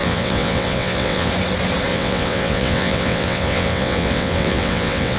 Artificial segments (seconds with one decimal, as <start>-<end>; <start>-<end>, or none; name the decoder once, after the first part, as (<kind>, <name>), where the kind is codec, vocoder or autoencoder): 0.0-1.3 (vocoder, WaveNeXt); 1.9-5.2

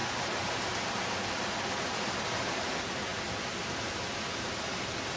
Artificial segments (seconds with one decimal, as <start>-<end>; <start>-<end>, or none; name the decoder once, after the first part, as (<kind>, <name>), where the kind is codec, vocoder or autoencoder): none

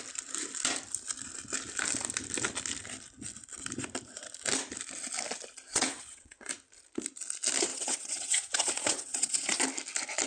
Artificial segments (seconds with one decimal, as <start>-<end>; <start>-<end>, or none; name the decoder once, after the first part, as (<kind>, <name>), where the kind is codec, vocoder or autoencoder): 5.7-6.5 (vocoder, WaveNeXt); 7.7-9.6

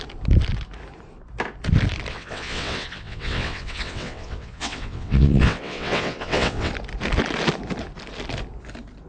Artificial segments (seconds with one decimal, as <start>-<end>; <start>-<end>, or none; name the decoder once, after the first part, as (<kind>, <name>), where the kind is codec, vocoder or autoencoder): 2.1-6.7 (vocoder, WaveNeXt)

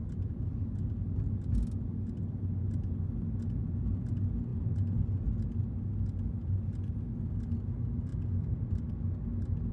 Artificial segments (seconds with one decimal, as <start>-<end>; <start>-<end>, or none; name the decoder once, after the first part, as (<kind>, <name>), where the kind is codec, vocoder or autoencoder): none

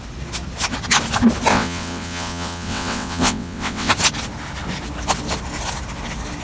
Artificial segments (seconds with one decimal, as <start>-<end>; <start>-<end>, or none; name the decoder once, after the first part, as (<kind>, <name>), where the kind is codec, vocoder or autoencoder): 1.5-3.9 (vocoder, WaveNeXt)